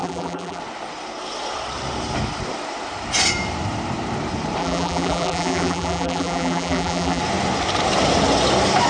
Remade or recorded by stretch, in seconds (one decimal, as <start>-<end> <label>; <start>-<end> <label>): 0.0-0.6 remade; 0.6-4.6 recorded; 4.6-7.2 remade; 7.2-8.9 recorded